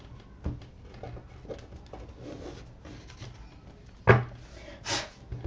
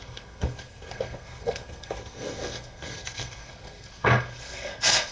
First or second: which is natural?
first